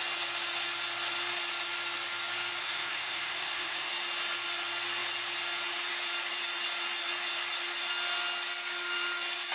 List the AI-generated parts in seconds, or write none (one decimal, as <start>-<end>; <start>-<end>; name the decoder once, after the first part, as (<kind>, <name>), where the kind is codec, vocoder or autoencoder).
2.6-3.9 (autoencoder, DAC-VAE)

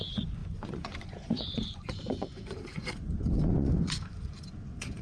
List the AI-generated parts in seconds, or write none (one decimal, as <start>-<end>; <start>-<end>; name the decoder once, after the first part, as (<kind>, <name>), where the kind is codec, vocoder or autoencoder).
0.0-5.0 (vocoder, Vocos)

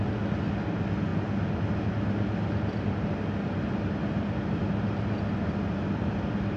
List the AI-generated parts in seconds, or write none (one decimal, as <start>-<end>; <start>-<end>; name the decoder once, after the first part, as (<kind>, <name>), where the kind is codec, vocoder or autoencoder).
none